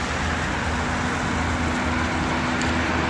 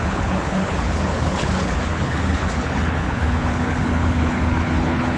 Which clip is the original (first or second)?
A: first